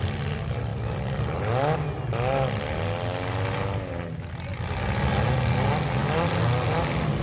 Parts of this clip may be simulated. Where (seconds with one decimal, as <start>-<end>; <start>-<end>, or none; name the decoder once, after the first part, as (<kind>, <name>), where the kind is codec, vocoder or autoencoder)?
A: none